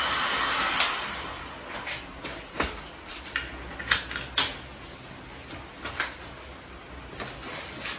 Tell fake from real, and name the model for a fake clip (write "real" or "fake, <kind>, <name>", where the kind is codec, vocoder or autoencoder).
real